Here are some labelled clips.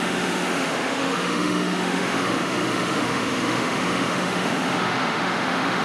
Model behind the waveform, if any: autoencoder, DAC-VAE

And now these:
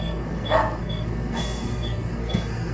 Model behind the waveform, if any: codec, SNAC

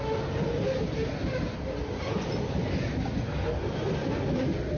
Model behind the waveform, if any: none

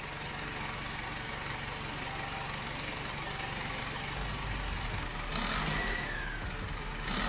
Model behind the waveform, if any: none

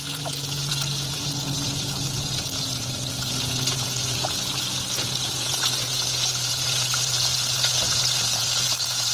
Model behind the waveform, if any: vocoder, Vocos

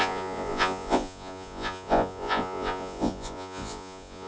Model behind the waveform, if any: vocoder, Vocos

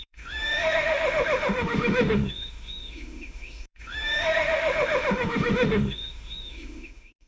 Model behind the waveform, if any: autoencoder, DAC-VAE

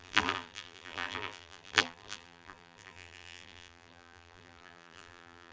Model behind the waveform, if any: vocoder, BigVGAN v2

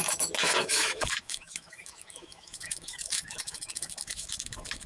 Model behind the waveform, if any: autoencoder, DAC-VAE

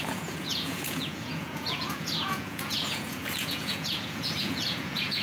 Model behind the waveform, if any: vocoder, Vocos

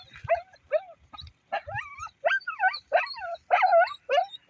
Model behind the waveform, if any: none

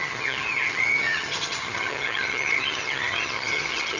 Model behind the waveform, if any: vocoder, HiFi-GAN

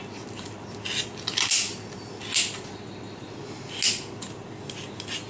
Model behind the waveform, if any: none